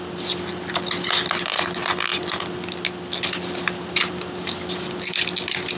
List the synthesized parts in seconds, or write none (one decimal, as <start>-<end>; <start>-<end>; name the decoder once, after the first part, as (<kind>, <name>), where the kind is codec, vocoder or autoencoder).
none